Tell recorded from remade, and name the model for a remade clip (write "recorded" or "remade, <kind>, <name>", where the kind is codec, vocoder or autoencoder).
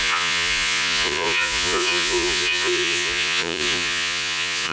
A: remade, vocoder, Vocos